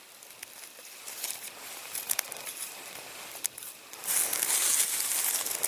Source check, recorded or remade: recorded